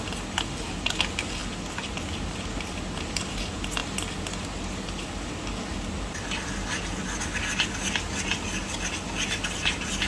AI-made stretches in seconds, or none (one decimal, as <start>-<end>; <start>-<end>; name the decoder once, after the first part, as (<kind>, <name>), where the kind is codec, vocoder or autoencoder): none

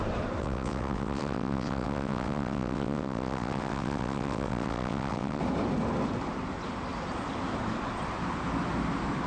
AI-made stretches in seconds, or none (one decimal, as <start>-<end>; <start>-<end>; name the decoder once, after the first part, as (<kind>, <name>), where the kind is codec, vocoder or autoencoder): 0.4-5.4 (vocoder, WaveNeXt)

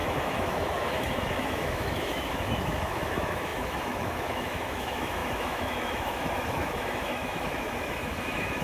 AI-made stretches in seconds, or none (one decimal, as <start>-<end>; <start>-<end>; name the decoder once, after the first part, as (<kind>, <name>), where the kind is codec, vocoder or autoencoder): 0.0-8.6 (autoencoder, DAC-VAE)

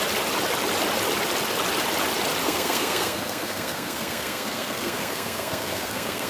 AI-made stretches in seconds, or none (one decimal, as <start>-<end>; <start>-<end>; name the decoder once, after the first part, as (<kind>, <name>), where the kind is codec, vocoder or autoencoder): 2.4-6.3 (codec, SNAC)